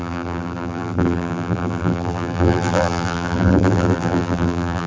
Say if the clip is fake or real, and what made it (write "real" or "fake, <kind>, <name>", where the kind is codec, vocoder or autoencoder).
fake, vocoder, BigVGAN v2